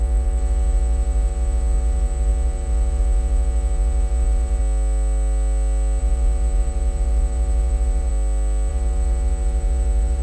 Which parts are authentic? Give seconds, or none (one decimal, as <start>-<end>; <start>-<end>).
4.6-6.0; 8.1-8.7